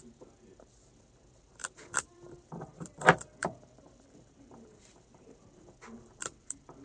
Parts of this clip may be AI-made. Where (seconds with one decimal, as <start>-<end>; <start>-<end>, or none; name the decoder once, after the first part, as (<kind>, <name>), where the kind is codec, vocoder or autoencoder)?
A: 1.6-2.5 (vocoder, BigVGAN v2); 3.4-5.4